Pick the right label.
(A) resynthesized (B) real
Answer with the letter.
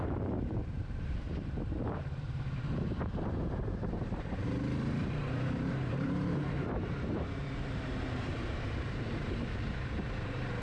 A